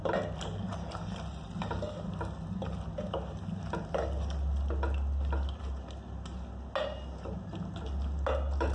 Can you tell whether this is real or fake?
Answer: real